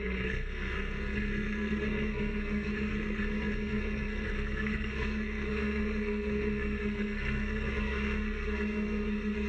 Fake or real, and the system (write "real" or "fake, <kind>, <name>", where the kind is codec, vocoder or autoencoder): fake, codec, SNAC